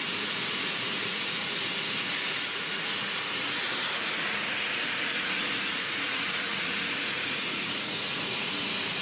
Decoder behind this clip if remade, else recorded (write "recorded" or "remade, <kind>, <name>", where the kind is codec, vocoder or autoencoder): remade, vocoder, Vocos